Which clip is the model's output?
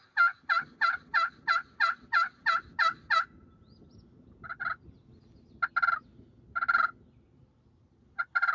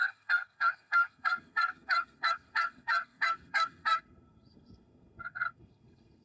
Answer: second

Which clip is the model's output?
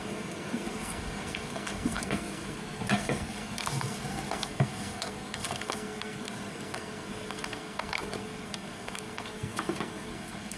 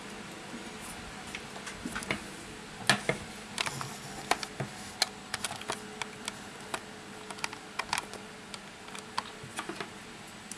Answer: first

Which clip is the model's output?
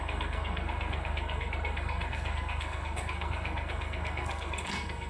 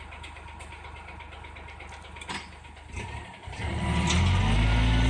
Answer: first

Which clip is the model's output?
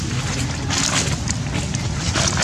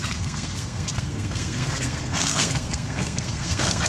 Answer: second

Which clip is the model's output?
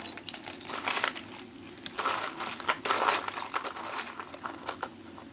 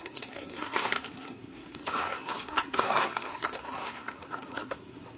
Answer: second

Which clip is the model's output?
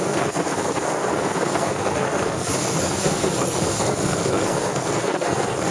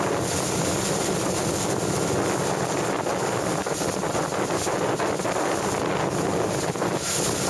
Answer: first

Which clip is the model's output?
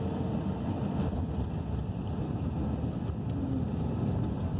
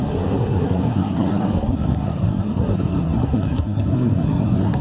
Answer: second